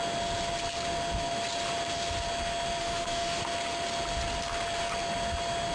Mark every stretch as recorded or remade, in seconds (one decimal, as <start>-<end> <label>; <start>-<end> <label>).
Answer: 0.0-2.8 recorded; 2.8-3.4 remade; 3.4-5.7 recorded